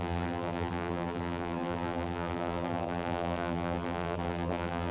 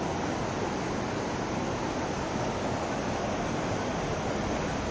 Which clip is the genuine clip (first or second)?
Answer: second